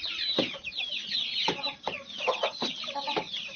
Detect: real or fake real